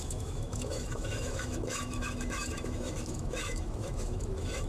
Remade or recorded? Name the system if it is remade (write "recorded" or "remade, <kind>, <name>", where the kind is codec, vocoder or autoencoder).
remade, autoencoder, DAC-VAE